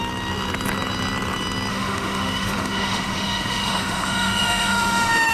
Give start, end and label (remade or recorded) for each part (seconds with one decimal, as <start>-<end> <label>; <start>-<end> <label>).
0.0-1.7 recorded; 1.7-5.3 remade